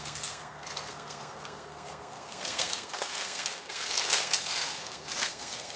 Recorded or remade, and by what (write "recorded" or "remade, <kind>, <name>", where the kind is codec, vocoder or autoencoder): remade, codec, SNAC